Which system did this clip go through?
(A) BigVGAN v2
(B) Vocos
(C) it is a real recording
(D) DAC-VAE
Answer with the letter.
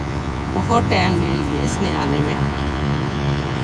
B